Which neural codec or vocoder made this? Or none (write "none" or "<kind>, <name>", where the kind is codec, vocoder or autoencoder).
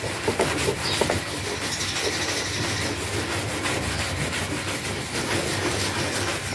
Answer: none